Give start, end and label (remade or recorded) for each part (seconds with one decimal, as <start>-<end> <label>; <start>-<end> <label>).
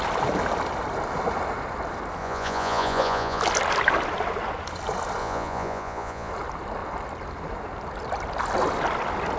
0.0-2.2 recorded; 2.2-3.4 remade; 3.4-5.2 recorded; 5.2-6.3 remade; 6.3-9.4 recorded